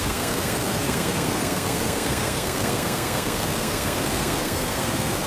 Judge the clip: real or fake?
fake